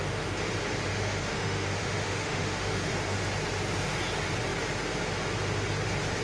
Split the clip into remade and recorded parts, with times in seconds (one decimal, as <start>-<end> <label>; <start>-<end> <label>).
0.0-0.9 recorded; 0.9-3.2 remade; 3.2-6.2 recorded